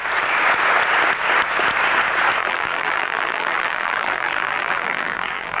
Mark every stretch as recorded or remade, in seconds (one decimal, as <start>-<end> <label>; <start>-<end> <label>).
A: 0.0-2.4 recorded; 2.4-5.6 remade